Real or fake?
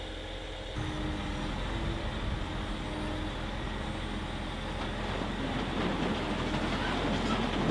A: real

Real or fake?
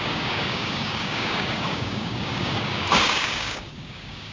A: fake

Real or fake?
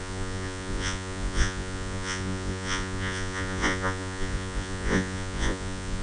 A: fake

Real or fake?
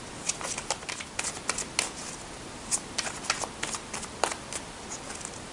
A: real